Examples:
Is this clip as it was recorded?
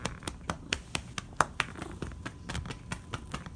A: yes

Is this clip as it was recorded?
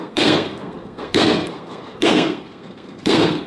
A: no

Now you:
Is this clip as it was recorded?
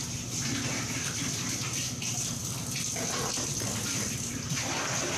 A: yes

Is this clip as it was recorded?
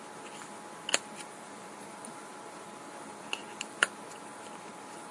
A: yes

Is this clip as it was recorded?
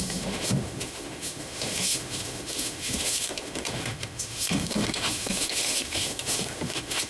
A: no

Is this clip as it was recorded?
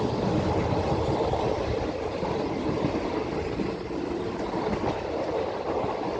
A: yes